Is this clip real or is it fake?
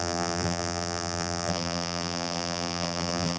fake